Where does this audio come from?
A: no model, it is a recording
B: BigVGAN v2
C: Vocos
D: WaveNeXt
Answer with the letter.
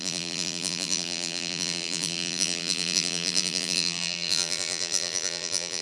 B